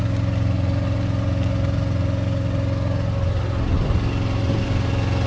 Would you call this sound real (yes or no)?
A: yes